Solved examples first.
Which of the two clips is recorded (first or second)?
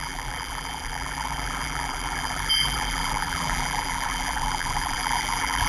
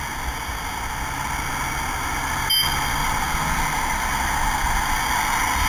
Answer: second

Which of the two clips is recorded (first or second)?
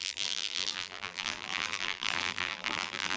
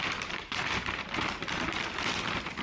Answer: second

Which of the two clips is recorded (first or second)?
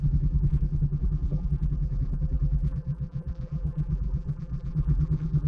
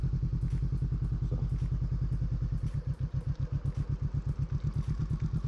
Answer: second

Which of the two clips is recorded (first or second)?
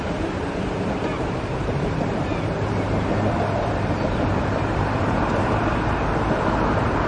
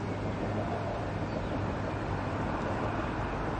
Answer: second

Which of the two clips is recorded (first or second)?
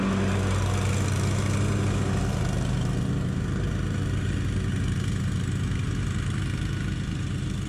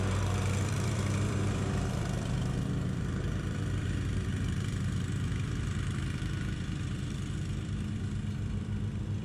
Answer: first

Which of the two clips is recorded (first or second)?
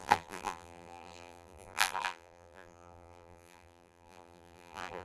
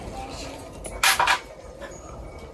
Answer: second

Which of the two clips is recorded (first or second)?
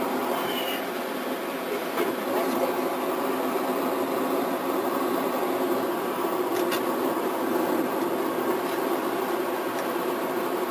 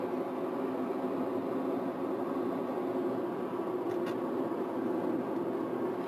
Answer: second